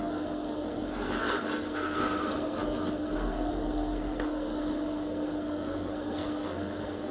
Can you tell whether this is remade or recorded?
remade